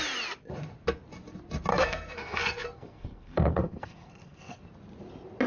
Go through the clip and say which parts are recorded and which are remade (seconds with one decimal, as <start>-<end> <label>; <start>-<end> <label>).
0.0-1.7 recorded; 1.7-4.6 remade; 4.6-5.5 recorded